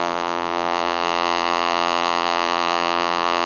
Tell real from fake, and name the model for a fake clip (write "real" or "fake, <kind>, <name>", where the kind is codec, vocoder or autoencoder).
fake, vocoder, BigVGAN v2